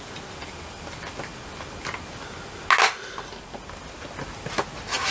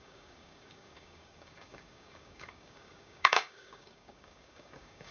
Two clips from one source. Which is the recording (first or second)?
first